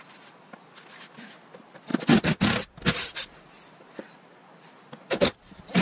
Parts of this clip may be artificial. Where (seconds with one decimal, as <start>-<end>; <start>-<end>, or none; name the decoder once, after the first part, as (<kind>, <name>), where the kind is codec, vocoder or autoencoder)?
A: none